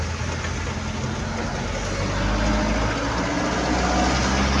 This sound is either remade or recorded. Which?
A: recorded